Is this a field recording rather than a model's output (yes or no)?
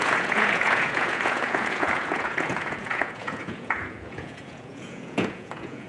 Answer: no